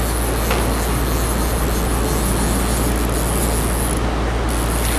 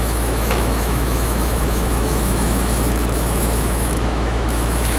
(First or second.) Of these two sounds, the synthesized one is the second